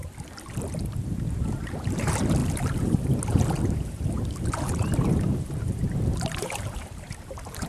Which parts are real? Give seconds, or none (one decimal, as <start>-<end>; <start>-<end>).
0.0-0.8

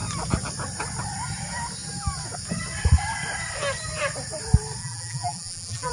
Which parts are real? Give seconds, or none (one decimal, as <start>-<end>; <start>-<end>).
0.0-4.8

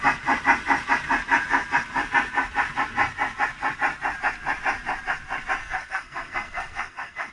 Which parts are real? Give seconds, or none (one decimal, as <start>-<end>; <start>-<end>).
0.0-5.6

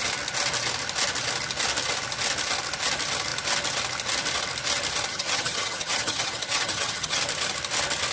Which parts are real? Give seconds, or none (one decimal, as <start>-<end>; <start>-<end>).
0.0-5.1; 7.2-8.1

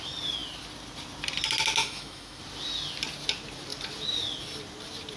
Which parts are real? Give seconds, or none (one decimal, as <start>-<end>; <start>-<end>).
0.0-1.8; 2.4-5.2

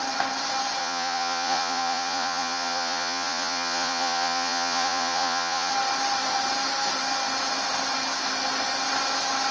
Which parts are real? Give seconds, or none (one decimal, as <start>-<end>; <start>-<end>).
0.0-0.8; 5.7-9.5